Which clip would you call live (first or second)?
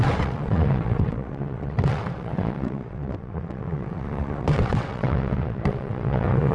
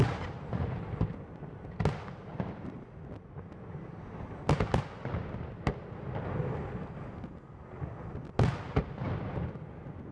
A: second